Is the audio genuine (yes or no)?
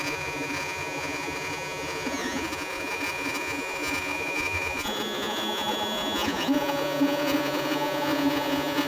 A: no